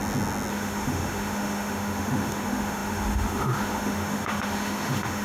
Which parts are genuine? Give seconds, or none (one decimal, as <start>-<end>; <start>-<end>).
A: 0.0-0.5